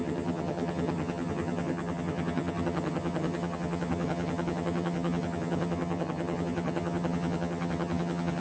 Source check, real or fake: fake